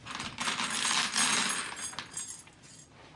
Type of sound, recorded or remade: recorded